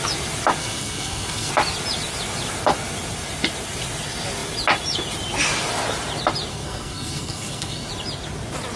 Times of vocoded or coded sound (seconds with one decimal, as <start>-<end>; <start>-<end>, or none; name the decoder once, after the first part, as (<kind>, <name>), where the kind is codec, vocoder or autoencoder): 0.6-1.5 (codec, SNAC); 6.5-7.9